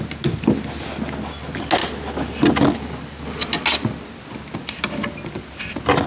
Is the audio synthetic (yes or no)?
no